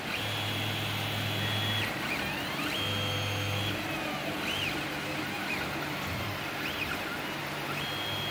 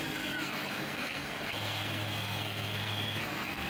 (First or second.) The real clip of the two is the first